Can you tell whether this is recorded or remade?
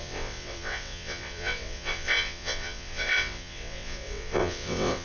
remade